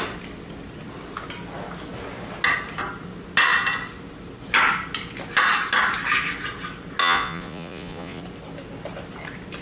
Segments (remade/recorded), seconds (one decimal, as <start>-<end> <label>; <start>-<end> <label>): 0.0-7.0 recorded; 7.0-8.2 remade; 8.2-9.6 recorded